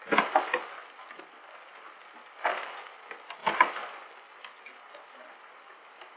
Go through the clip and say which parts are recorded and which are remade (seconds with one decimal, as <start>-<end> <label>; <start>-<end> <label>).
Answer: 0.0-6.2 recorded